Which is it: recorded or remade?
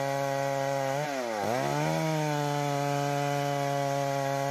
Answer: recorded